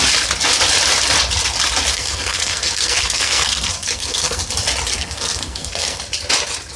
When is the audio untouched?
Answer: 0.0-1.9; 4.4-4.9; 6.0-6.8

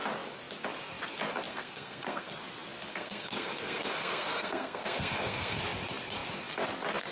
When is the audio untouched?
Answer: 0.0-1.5; 2.3-2.9; 5.6-7.1